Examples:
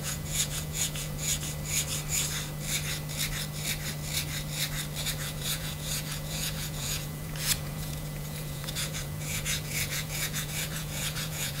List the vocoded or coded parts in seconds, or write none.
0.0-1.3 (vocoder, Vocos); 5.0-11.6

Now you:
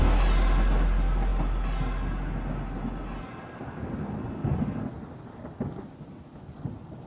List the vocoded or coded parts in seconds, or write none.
none